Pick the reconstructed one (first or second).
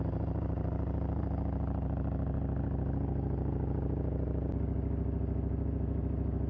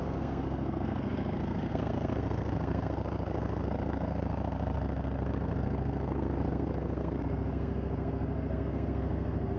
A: second